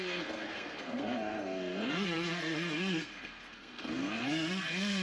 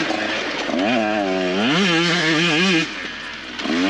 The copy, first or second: first